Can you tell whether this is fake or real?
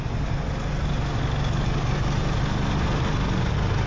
real